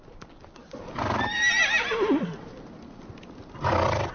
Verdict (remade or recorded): recorded